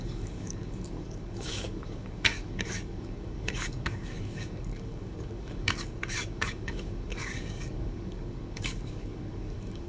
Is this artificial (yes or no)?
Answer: yes